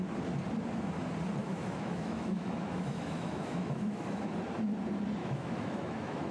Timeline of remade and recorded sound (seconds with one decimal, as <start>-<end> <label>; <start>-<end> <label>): 0.0-1.4 recorded; 1.4-4.3 remade; 4.3-5.2 recorded; 5.2-6.3 remade

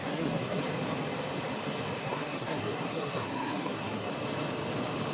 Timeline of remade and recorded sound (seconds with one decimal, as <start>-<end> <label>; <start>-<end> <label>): 0.0-0.6 remade; 0.6-2.0 recorded; 2.0-4.1 remade; 4.1-5.1 recorded

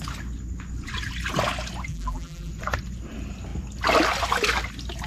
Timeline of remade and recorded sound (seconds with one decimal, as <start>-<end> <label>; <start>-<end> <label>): 0.0-1.9 recorded; 1.9-2.5 remade; 2.5-5.1 recorded

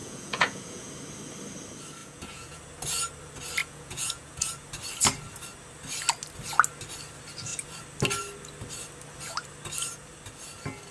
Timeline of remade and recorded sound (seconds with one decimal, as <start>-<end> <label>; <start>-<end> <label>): 0.0-0.9 remade; 0.9-2.0 recorded; 2.0-2.6 remade; 2.6-3.6 recorded; 3.6-4.6 remade; 4.6-10.9 recorded

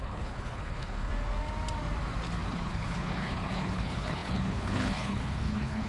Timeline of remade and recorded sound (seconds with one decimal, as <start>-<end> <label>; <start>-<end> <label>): 0.0-1.1 remade; 1.1-2.5 recorded; 2.5-5.9 remade